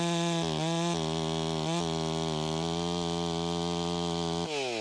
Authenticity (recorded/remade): recorded